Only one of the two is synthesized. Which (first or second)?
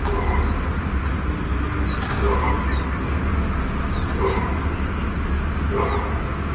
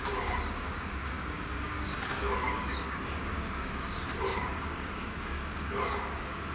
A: second